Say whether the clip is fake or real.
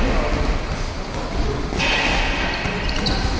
real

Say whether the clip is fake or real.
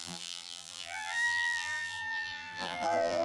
fake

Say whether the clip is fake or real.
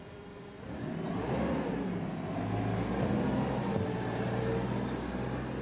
real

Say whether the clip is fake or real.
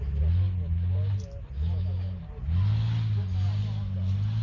real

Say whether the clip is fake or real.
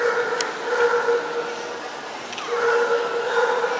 real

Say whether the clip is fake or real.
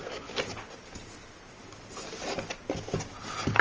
real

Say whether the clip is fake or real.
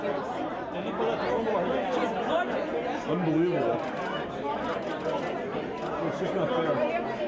real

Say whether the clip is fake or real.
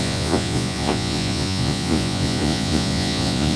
fake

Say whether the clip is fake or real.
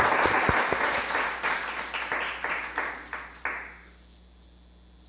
real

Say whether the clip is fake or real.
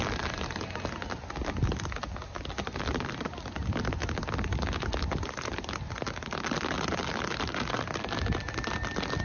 real